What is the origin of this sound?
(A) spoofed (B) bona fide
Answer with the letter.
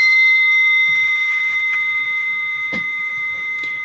A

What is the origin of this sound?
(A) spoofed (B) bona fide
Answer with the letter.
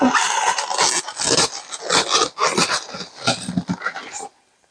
B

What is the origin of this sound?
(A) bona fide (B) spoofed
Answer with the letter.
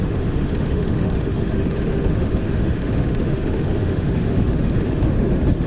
B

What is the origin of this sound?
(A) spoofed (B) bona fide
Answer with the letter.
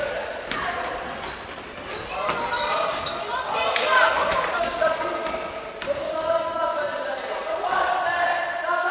B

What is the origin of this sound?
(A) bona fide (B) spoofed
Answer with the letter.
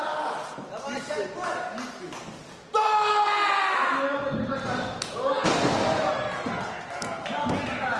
A